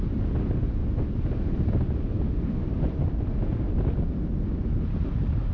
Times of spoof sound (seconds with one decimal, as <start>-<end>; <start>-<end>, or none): none